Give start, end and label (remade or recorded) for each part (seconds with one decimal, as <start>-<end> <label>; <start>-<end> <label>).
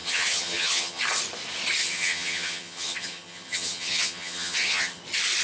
0.0-1.0 remade; 1.0-1.8 recorded; 1.8-5.0 remade; 5.0-5.4 recorded